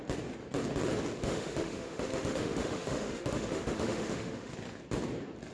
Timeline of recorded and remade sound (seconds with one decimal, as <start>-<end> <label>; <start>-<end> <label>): 0.0-1.2 recorded; 1.2-4.5 remade; 4.5-5.5 recorded